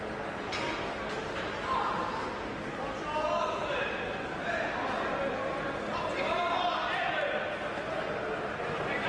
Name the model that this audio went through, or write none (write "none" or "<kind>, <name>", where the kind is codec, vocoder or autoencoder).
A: none